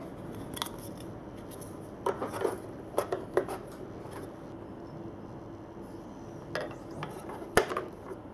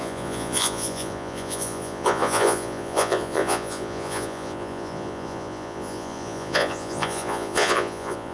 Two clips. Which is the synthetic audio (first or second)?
second